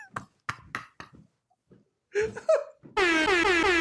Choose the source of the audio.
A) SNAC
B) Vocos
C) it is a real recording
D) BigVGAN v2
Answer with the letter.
C